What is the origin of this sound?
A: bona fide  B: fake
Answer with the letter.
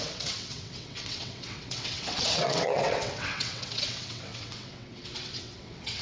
B